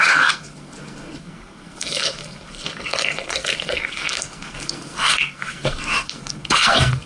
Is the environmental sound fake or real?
fake